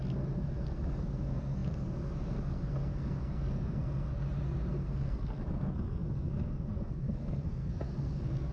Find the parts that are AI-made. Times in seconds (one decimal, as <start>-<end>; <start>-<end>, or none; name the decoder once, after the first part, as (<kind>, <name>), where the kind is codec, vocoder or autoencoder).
0.0-4.1 (codec, SNAC); 4.7-8.5